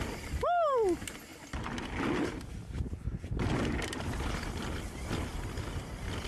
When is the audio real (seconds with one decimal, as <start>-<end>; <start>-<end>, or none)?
0.0-1.3; 5.1-6.3